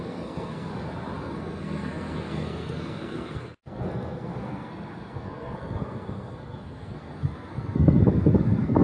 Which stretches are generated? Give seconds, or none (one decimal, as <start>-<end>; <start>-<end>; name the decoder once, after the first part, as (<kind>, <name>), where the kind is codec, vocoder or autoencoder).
0.0-0.7 (codec, SNAC); 1.2-8.8

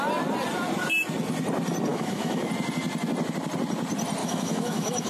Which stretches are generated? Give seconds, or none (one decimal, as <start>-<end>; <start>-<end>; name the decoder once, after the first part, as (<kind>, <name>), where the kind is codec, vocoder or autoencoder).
1.9-2.5 (autoencoder, DAC-VAE); 4.2-5.1